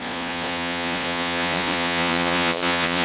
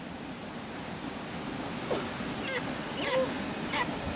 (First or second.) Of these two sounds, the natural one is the second